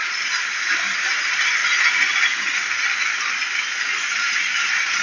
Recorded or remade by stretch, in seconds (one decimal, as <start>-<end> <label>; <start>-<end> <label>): 0.0-1.6 remade; 1.6-4.6 recorded; 4.6-5.0 remade